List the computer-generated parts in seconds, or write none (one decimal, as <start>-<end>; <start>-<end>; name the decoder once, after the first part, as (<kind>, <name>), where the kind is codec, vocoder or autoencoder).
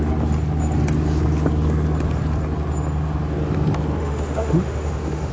4.0-5.3 (autoencoder, DAC-VAE)